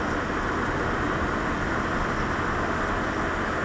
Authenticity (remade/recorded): recorded